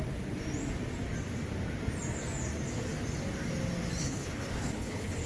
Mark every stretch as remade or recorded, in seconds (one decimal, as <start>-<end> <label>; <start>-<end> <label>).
0.0-4.0 recorded; 4.0-5.3 remade